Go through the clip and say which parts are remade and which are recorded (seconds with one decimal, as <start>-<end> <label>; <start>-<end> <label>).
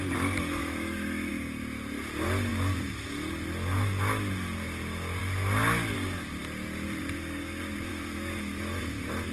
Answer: 0.0-0.6 recorded; 0.6-1.3 remade; 1.3-7.9 recorded; 7.9-8.8 remade; 8.8-9.3 recorded